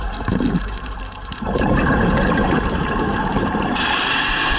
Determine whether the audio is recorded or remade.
remade